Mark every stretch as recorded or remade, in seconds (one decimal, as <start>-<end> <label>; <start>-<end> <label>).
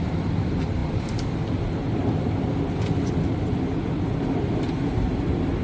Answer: 0.0-5.6 recorded